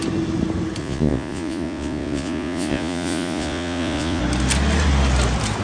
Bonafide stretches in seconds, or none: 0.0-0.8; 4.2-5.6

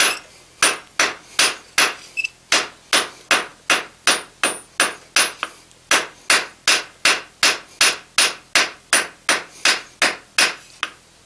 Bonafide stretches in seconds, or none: 0.0-11.3

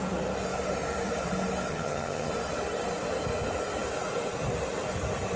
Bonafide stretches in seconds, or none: 0.0-1.7; 2.3-5.4

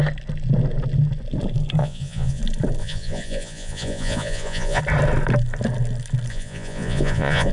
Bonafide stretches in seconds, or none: 0.0-1.8; 2.4-2.8; 4.8-6.3

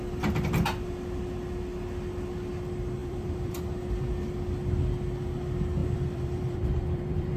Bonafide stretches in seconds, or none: 0.0-3.0; 4.1-5.8

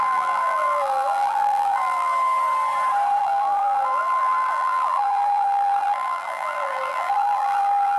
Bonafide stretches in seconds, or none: 2.1-3.2